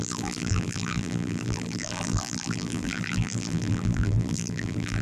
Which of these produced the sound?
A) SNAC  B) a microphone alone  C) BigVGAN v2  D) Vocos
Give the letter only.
C